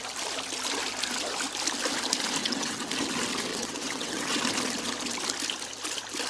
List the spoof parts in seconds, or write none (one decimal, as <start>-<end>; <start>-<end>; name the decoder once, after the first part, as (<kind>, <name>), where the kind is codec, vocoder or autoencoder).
2.4-2.9 (vocoder, WaveNeXt); 3.5-4.4